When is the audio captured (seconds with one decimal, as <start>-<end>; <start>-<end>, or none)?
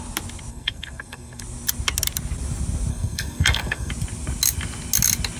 0.0-0.5; 1.4-2.9; 3.9-5.4